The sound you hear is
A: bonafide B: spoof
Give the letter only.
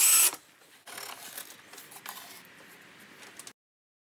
A